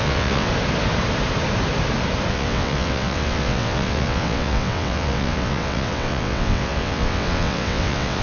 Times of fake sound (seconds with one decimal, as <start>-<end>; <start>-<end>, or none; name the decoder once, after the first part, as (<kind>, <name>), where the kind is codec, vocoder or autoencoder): 0.0-0.5 (vocoder, WaveNeXt); 2.3-8.2